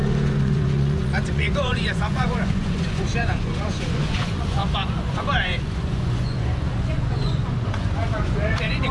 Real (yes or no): no